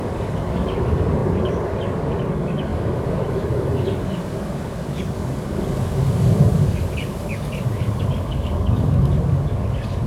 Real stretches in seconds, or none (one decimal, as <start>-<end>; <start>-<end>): none